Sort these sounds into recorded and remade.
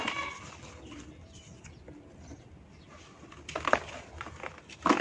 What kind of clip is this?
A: recorded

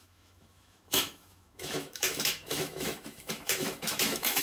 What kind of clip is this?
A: remade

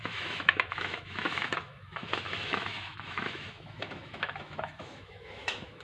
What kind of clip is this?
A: remade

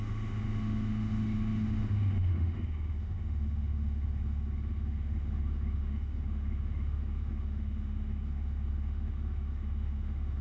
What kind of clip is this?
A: remade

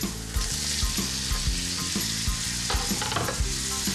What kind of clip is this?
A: recorded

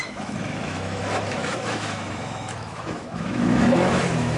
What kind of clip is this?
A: remade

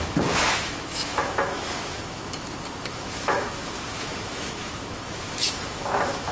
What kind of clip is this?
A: remade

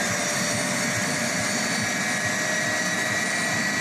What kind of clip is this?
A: recorded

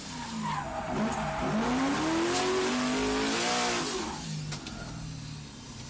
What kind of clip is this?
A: recorded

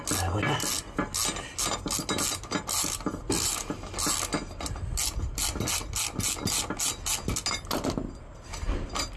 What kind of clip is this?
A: recorded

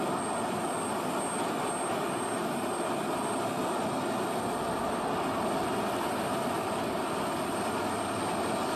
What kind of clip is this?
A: recorded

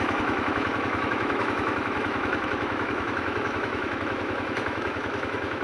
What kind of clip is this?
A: remade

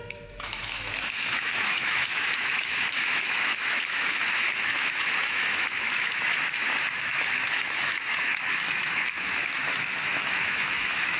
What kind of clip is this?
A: remade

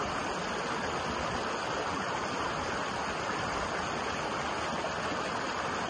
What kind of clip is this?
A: recorded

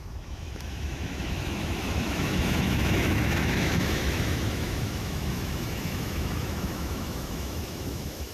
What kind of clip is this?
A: remade